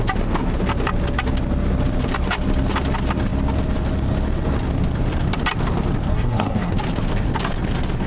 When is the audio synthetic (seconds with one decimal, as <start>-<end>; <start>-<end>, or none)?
6.1-6.7